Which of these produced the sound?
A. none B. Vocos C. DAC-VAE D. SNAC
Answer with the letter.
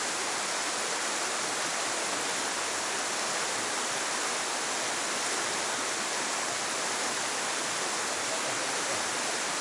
A